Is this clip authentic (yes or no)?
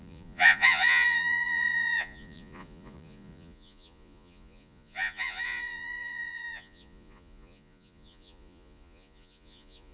no